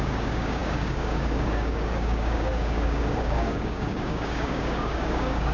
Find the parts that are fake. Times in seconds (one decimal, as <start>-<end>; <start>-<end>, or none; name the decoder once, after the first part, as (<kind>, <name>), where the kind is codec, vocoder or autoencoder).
0.0-5.5 (codec, DAC)